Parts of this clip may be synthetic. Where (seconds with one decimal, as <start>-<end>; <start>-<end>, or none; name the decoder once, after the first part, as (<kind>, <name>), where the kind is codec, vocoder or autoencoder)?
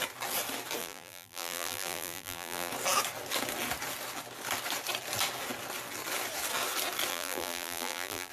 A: 0.8-2.7 (vocoder, BigVGAN v2); 7.1-8.3